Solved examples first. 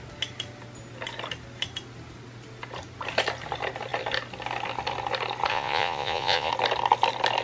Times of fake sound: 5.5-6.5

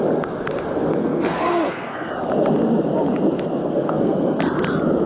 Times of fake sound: 0.9-2.1; 3.6-4.4

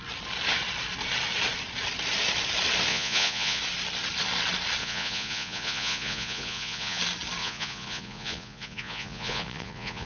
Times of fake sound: 2.9-3.6; 4.8-7.0; 7.4-10.1

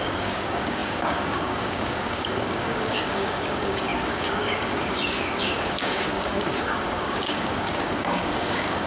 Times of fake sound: 0.0-8.9

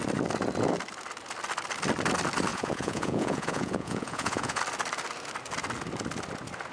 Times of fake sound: 2.5-4.6

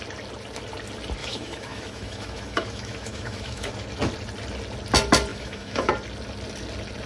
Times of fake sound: 1.2-3.7; 5.3-5.9

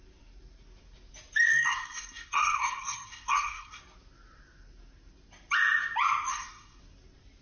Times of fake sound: 1.5-3.8; 6.3-6.8